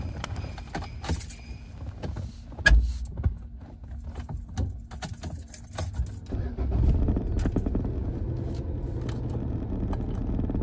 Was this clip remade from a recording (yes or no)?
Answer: no